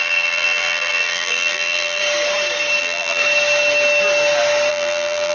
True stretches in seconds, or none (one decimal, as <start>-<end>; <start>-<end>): 2.0-2.8; 3.2-4.7